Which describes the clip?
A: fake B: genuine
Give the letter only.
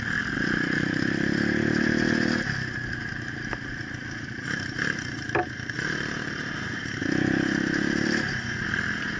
B